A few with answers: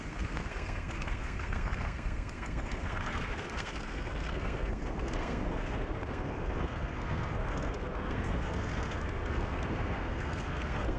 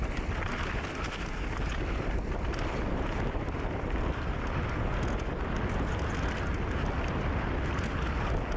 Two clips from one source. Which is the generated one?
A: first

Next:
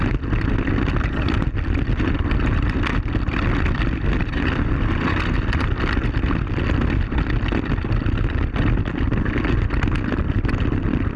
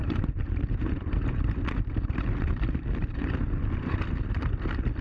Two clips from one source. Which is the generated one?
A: second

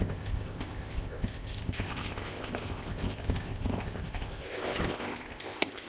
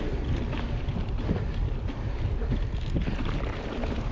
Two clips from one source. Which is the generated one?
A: first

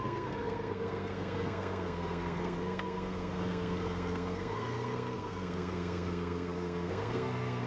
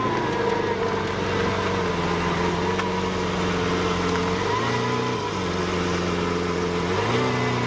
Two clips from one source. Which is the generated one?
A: first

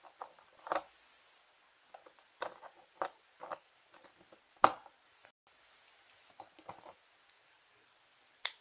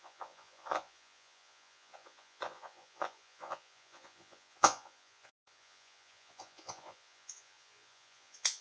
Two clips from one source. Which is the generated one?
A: second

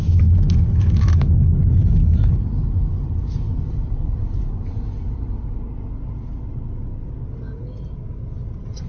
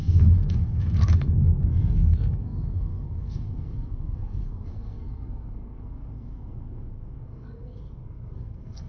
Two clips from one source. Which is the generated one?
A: second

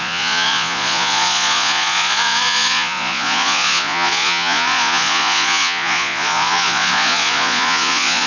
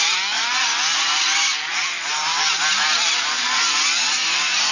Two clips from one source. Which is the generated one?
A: first